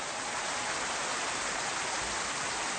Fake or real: real